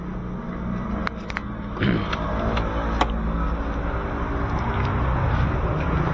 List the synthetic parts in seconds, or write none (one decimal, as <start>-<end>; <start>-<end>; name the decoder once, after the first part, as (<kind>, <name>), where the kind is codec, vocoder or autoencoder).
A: none

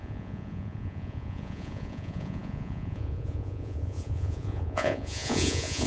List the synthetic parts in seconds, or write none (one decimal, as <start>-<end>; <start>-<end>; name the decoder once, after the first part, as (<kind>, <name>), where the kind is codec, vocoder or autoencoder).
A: 0.0-5.9 (vocoder, Vocos)

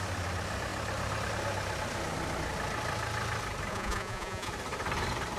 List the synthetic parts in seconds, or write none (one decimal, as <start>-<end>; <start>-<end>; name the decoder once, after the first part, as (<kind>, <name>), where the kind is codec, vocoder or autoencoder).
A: 3.7-4.5 (vocoder, Vocos)